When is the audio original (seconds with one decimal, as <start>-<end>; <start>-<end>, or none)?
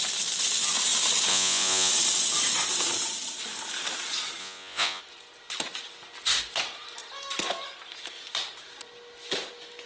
0.0-1.3; 1.9-4.4; 5.0-9.9